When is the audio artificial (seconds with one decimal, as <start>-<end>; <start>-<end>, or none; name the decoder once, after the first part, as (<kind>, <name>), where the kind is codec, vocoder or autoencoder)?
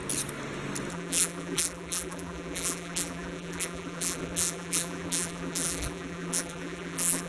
0.9-7.3 (vocoder, BigVGAN v2)